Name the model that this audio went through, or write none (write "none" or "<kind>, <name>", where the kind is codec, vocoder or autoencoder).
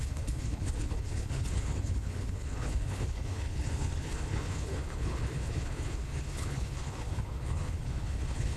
codec, HILCodec